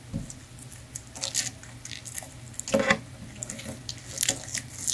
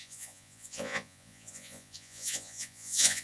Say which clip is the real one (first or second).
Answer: first